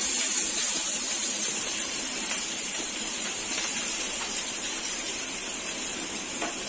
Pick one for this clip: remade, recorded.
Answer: remade